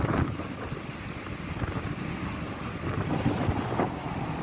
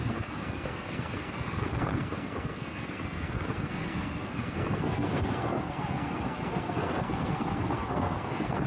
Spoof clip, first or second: second